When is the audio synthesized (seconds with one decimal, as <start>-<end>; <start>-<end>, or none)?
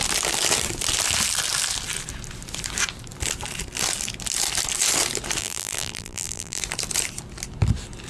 5.4-6.6